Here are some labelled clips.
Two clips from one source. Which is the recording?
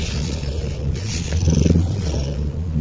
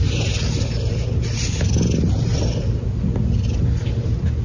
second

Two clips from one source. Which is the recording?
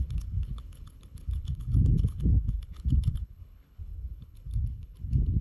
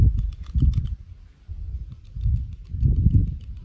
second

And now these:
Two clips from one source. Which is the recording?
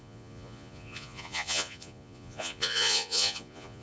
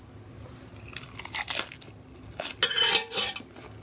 second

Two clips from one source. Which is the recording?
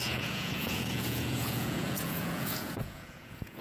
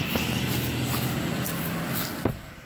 second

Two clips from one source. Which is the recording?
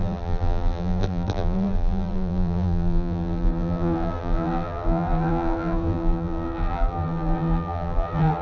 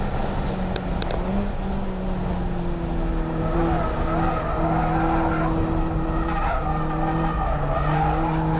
second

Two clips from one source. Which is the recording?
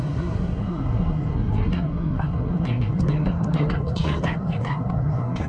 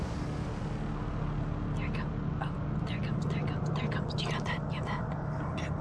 second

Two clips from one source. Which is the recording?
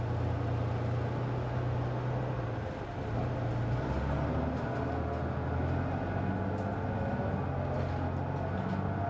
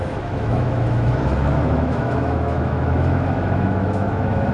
first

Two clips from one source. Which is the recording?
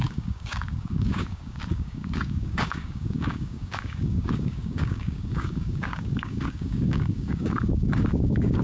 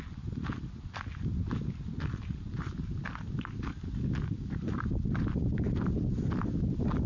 second